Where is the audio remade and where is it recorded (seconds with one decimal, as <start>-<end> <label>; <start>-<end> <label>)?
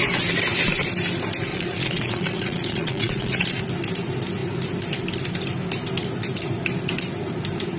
0.0-1.5 recorded; 1.5-3.6 remade; 3.6-7.8 recorded